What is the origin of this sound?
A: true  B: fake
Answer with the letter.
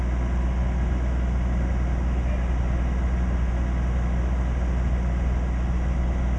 A